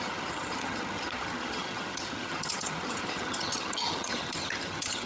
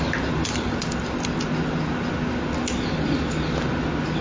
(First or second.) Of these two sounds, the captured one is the second